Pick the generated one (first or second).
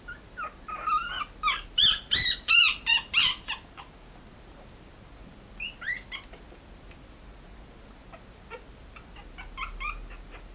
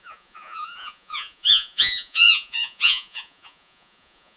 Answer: second